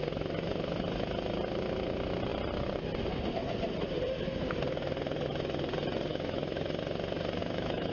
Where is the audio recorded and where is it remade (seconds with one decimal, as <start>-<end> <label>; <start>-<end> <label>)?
0.0-6.1 recorded; 6.1-6.8 remade; 6.8-7.4 recorded; 7.4-7.9 remade

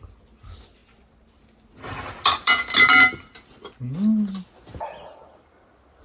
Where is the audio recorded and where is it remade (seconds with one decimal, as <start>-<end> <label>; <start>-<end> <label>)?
0.0-6.0 recorded

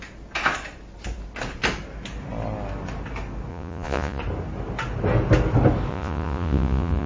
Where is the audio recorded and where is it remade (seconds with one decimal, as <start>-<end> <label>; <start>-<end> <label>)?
0.0-3.5 recorded; 3.5-4.2 remade; 4.2-5.9 recorded; 5.9-7.1 remade